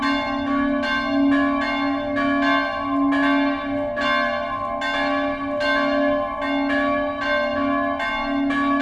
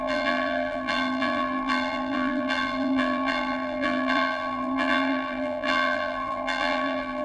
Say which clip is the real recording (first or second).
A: first